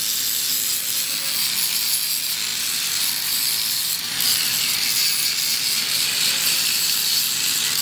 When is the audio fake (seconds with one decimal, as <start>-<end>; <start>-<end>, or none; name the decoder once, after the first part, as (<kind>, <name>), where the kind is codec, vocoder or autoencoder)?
2.5-4.0 (vocoder, BigVGAN v2); 5.8-7.2